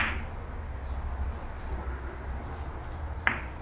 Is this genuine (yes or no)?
yes